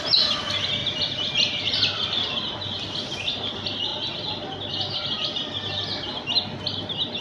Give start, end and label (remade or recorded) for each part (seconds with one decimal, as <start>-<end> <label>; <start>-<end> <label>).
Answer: 0.0-0.8 recorded; 0.8-2.8 remade; 2.8-3.9 recorded; 3.9-4.7 remade; 4.7-7.2 recorded